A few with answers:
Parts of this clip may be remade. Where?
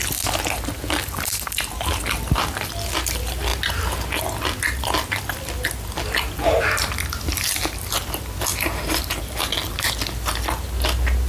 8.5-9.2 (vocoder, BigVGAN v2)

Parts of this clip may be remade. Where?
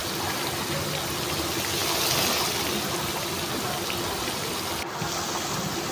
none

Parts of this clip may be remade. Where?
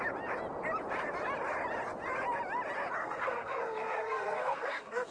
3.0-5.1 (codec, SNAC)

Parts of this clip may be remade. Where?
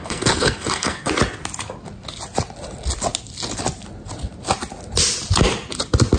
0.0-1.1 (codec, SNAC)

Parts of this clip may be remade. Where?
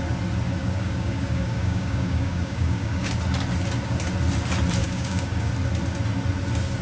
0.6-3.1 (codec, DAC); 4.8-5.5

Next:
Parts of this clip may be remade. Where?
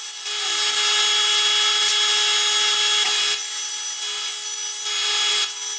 none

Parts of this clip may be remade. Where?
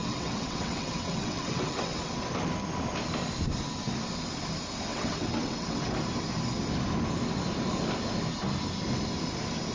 0.0-2.2 (vocoder, WaveNeXt); 4.9-5.9